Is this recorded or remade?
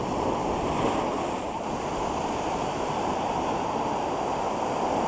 recorded